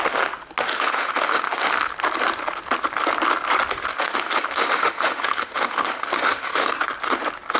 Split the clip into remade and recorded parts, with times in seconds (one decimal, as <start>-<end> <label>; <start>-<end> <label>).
0.0-0.7 recorded; 0.7-1.7 remade; 1.7-3.9 recorded; 3.9-6.7 remade; 6.7-7.6 recorded